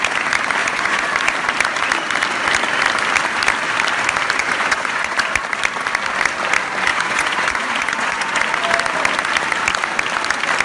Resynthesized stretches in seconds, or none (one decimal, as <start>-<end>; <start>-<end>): 0.6-1.1; 4.4-5.3; 6.9-8.4